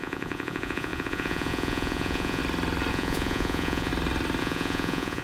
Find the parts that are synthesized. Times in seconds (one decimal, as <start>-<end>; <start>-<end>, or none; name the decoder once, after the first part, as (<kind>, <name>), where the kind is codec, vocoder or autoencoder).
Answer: 0.0-2.4 (vocoder, Vocos); 2.9-3.9; 4.4-5.2